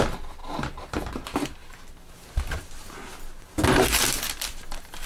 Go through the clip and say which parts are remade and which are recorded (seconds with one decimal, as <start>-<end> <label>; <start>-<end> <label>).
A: 0.0-5.1 recorded